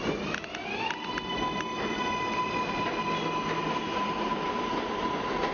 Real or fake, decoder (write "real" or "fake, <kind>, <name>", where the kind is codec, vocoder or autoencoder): real